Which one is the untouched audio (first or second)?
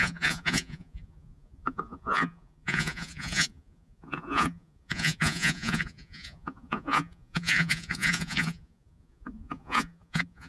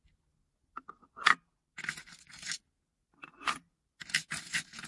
second